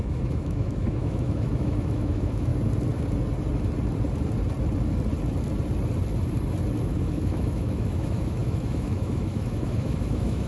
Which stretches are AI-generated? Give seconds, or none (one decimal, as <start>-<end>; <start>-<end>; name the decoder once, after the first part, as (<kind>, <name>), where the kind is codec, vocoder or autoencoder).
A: 0.0-2.5 (autoencoder, DAC-VAE); 6.8-10.5